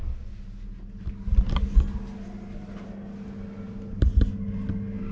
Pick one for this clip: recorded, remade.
recorded